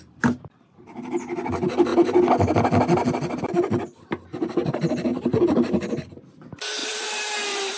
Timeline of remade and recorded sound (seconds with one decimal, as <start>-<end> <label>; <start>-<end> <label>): 0.0-5.1 recorded; 5.1-6.1 remade; 6.1-6.8 recorded; 6.8-7.8 remade